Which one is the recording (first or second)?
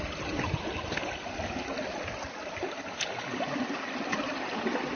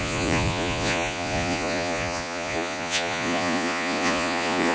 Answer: first